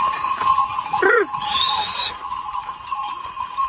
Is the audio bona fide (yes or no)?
no